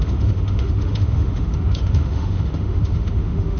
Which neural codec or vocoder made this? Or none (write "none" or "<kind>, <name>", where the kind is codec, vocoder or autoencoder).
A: autoencoder, DAC-VAE